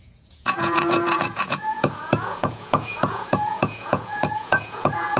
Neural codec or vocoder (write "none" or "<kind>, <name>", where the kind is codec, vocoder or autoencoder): vocoder, Vocos